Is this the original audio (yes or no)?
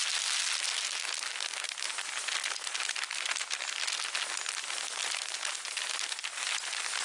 yes